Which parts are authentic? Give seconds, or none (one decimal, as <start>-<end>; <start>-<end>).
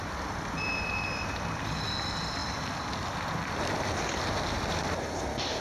0.0-5.6